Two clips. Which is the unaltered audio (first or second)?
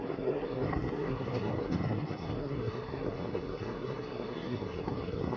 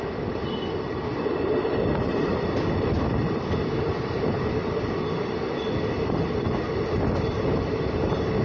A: second